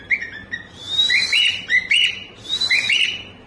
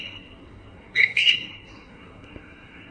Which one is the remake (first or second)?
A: second